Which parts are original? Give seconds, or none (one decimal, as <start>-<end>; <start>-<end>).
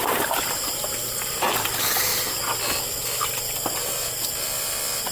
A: 0.0-5.1